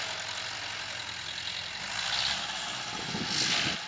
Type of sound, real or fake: real